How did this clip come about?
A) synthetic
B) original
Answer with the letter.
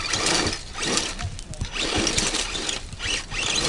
B